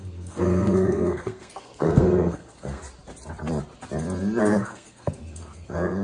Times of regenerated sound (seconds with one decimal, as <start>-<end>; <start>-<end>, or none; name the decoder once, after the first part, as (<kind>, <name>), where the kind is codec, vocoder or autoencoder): 0.0-2.8 (codec, SNAC); 4.4-6.0